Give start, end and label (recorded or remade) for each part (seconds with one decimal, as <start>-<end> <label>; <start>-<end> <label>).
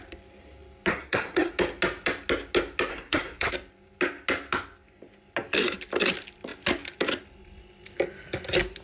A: 0.0-0.9 recorded; 0.9-1.5 remade; 1.5-2.9 recorded; 2.9-3.5 remade; 3.5-8.8 recorded